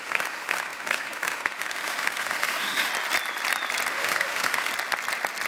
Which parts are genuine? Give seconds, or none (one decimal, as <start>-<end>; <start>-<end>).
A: 2.9-3.9; 4.7-5.5